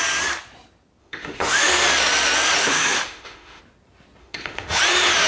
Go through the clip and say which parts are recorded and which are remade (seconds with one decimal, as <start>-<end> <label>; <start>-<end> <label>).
0.0-1.0 recorded; 1.0-1.7 remade; 1.7-2.6 recorded; 2.6-3.6 remade; 3.6-4.2 recorded; 4.2-4.8 remade; 4.8-5.3 recorded